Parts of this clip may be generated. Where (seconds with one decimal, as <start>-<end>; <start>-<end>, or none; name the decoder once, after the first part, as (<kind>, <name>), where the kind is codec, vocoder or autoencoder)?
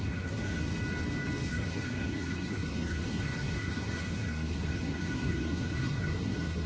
0.0-0.7 (codec, SNAC); 1.5-6.7